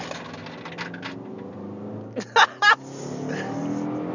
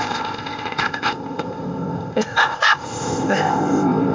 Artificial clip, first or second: second